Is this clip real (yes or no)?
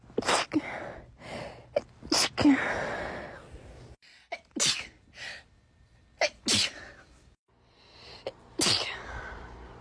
yes